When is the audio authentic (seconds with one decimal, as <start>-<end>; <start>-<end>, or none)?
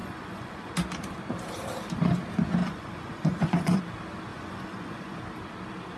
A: 0.7-2.6; 3.8-4.3; 5.2-6.0